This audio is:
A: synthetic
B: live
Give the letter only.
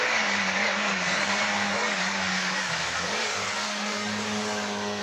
A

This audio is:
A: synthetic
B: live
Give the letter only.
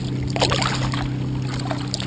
B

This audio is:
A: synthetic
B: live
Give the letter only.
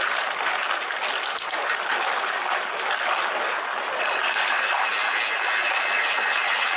B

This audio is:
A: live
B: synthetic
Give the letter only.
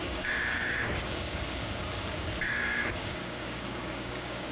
B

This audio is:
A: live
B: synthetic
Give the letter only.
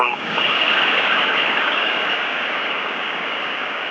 B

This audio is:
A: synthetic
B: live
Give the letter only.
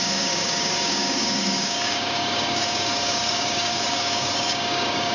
A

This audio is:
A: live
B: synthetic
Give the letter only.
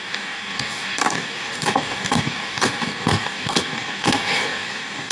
B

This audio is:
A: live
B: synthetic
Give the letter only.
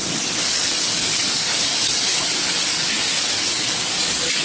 B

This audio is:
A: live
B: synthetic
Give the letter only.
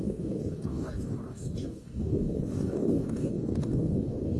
B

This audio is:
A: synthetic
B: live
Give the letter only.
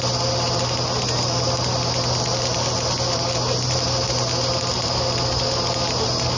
B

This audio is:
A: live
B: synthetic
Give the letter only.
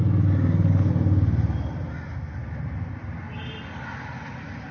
A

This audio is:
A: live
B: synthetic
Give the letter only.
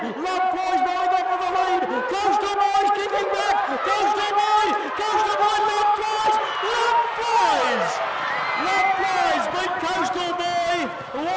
A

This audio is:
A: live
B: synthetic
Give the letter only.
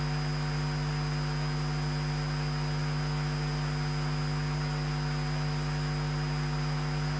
A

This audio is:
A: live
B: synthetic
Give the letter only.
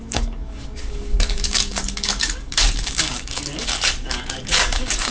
B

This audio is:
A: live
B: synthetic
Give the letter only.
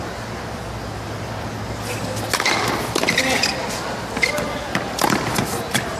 A